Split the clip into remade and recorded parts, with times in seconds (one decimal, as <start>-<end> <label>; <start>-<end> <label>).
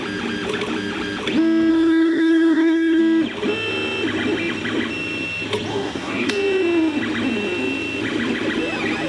0.0-1.7 recorded; 1.7-3.0 remade; 3.0-5.7 recorded; 5.7-6.3 remade; 6.3-9.1 recorded